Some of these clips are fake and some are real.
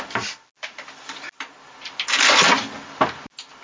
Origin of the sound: real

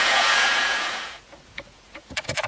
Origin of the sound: fake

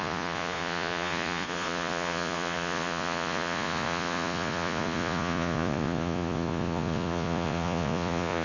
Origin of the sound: fake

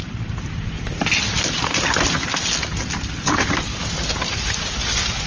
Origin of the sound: real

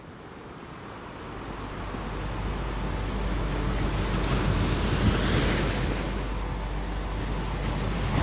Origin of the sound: real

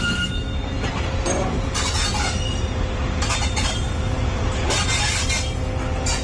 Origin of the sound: real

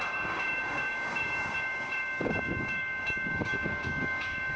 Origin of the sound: fake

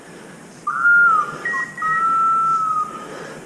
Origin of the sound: real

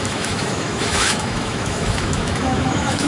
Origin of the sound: fake